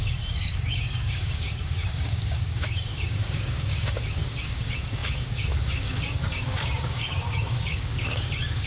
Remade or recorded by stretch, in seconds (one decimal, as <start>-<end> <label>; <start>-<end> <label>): 0.0-8.7 remade